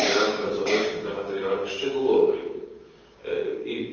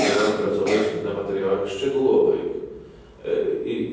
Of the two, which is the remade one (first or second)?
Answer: first